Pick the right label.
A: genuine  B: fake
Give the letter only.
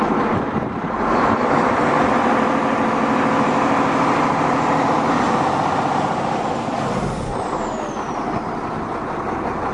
B